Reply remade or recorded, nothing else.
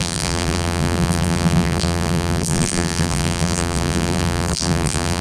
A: remade